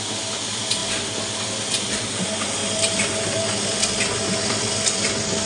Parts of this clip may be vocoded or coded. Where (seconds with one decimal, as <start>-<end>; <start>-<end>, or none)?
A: none